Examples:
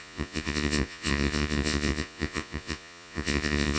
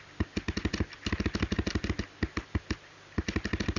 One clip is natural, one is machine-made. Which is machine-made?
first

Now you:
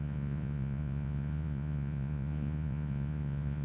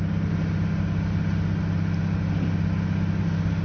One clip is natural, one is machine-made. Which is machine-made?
first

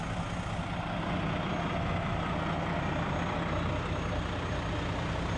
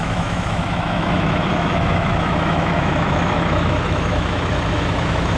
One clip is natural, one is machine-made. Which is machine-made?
second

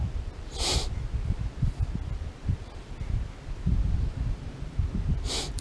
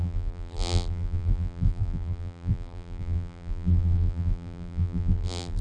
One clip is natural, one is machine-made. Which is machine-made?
second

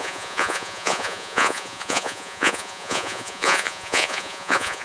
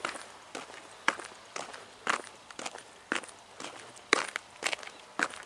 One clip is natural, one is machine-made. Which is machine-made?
first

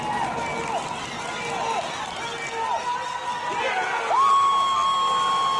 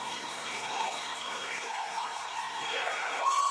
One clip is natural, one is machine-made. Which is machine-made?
second